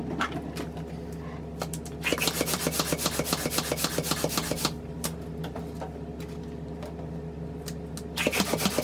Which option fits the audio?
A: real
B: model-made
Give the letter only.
A